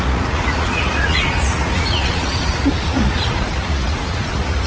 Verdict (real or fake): fake